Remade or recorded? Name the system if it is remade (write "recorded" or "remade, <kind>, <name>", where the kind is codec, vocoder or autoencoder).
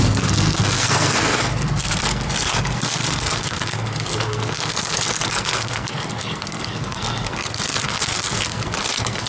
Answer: remade, codec, SNAC